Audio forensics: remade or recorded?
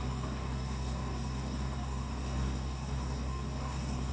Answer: remade